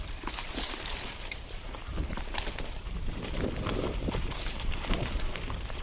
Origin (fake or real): fake